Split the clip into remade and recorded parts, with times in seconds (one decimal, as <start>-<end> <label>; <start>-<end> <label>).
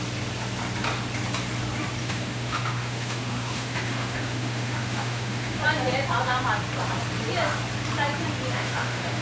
0.0-2.0 recorded; 2.0-5.6 remade; 5.6-8.5 recorded; 8.5-9.2 remade